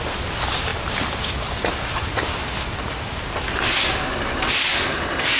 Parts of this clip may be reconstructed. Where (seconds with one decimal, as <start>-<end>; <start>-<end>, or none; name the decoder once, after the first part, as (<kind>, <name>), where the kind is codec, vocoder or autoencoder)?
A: none